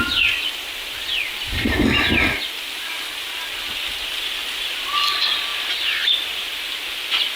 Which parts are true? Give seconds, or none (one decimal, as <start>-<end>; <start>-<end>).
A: 0.0-7.4